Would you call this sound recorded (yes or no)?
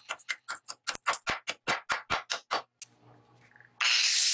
yes